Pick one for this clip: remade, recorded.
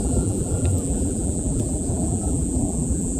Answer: remade